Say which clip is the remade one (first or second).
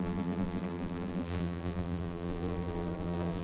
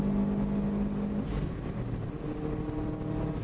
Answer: first